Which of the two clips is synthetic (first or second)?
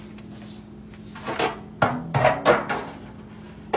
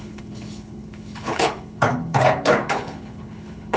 second